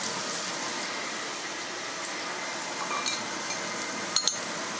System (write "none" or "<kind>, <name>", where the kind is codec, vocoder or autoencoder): none